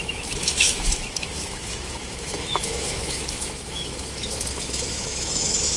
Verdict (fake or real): fake